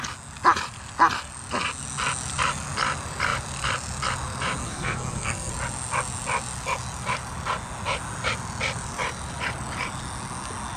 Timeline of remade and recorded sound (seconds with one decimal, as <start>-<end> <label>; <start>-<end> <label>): 0.0-4.6 recorded; 4.6-5.5 remade; 5.5-10.8 recorded